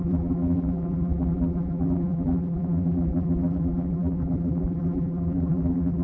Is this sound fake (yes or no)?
yes